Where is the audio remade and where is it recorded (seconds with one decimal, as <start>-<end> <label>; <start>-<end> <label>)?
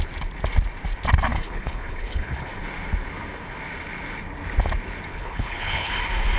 0.0-1.3 recorded; 1.3-2.5 remade; 2.5-5.1 recorded; 5.1-5.9 remade; 5.9-6.4 recorded